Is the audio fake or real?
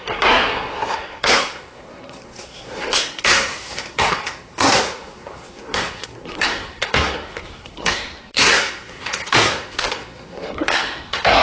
fake